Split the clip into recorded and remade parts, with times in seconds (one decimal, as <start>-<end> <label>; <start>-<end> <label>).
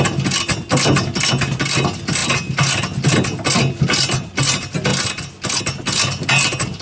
0.0-6.8 recorded